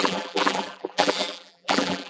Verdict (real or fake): fake